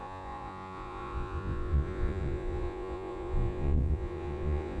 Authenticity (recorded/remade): remade